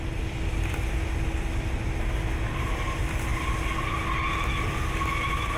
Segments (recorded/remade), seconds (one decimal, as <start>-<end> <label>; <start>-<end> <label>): 0.0-5.6 recorded